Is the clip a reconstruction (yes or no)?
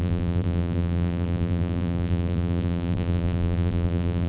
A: yes